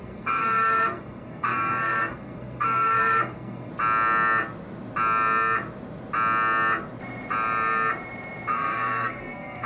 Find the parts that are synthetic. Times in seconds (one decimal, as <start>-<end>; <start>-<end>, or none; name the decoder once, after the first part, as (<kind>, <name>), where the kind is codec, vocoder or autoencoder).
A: 0.0-3.7 (codec, SNAC); 8.5-9.7